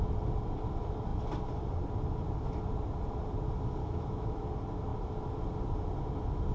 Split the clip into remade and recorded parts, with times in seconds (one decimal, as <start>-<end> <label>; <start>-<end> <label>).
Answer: 0.0-3.8 recorded; 3.8-4.4 remade; 4.4-6.5 recorded